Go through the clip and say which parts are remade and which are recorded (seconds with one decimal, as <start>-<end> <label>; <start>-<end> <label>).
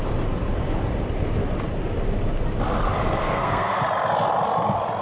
0.0-3.2 recorded; 3.2-3.8 remade; 3.8-5.0 recorded